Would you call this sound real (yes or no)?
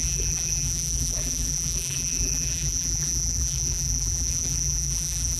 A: no